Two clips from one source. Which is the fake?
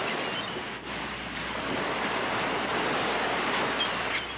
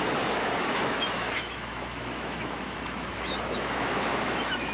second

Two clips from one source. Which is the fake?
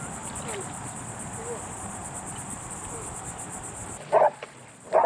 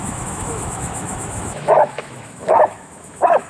second